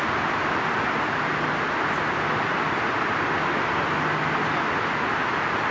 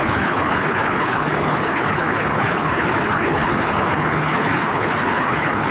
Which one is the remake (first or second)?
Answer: second